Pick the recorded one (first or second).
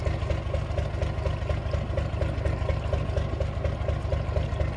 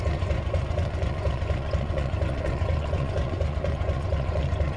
first